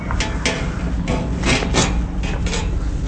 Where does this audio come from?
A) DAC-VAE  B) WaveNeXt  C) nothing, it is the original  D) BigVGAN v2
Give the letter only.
C